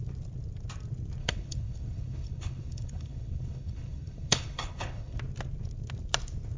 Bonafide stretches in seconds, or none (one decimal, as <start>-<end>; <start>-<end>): 0.0-1.2; 5.2-6.6